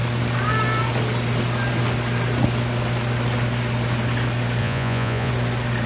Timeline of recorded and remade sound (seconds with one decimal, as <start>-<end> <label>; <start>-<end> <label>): 0.0-4.6 recorded; 4.6-5.3 remade; 5.3-5.9 recorded